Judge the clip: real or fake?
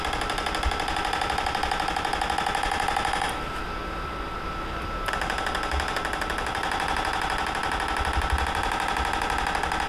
real